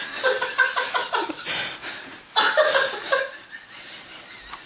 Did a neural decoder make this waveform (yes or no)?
no